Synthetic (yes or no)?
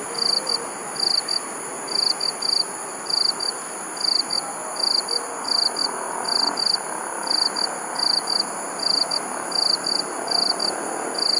no